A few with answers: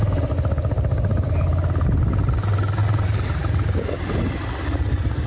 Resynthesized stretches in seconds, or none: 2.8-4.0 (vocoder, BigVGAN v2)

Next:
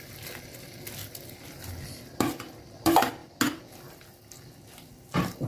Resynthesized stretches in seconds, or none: none

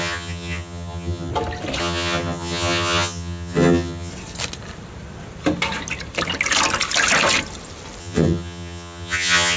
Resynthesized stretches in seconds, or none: 0.0-1.3 (vocoder, HiFi-GAN); 1.8-4.1; 8.0-9.6

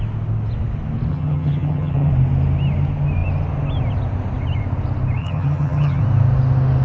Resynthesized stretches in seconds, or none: 1.1-2.1 (vocoder, HiFi-GAN); 5.2-6.0

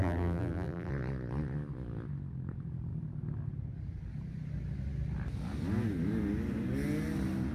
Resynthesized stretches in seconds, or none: 0.0-0.9 (vocoder, BigVGAN v2)

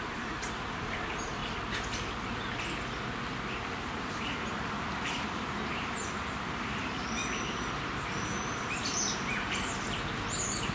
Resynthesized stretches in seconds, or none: 0.0-1.4 (vocoder, BigVGAN v2); 3.7-7.2; 8.5-10.7

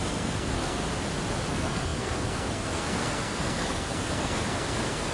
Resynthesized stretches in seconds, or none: 0.0-0.8 (codec, SNAC); 1.5-5.1

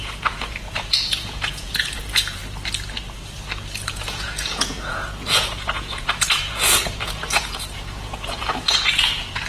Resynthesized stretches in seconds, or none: 0.0-2.4 (vocoder, Vocos); 3.9-9.5